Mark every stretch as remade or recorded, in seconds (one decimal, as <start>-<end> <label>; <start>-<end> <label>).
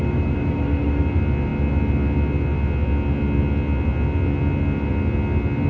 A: 0.0-1.1 remade; 1.1-5.7 recorded